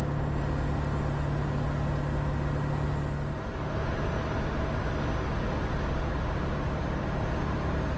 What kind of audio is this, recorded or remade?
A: recorded